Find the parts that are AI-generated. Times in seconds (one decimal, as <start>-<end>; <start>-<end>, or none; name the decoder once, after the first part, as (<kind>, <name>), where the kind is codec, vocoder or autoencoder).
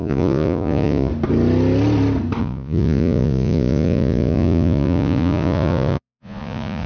0.0-1.1 (vocoder, Vocos); 2.4-6.9